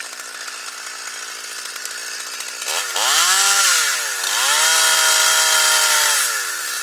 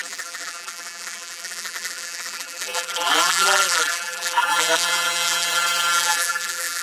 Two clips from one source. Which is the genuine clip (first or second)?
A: first